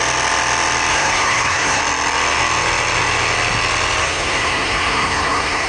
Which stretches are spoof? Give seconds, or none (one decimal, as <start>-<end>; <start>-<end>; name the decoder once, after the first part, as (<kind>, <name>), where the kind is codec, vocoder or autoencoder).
0.9-1.8 (codec, SNAC); 4.0-5.7